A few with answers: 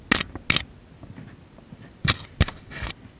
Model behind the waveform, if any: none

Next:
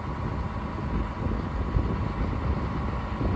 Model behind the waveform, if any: none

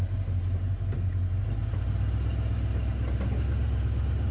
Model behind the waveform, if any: none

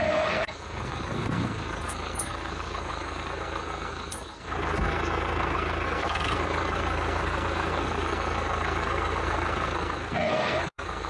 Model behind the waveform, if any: codec, SNAC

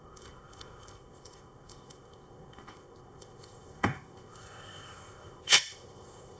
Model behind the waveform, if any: codec, ZipCodec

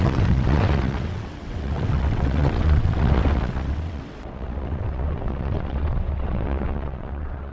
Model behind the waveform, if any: vocoder, WaveNeXt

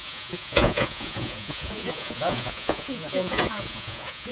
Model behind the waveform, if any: vocoder, Vocos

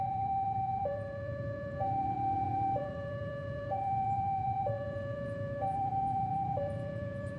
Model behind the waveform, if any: vocoder, Vocos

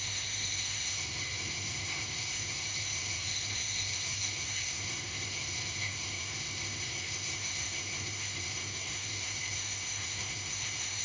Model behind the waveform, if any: codec, SNAC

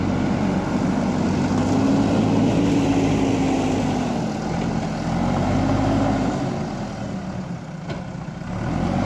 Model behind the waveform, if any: none